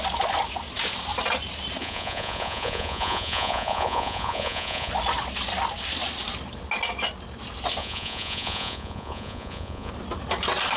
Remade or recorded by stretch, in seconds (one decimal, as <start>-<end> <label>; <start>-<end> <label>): 0.0-1.8 recorded; 1.8-4.9 remade; 4.9-7.8 recorded; 7.8-9.9 remade; 9.9-10.8 recorded